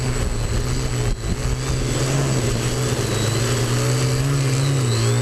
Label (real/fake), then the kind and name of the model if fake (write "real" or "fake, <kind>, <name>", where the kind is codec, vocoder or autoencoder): real